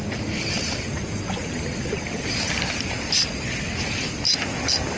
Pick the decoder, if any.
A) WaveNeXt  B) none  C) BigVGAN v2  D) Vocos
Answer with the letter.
B